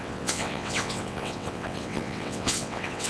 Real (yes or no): no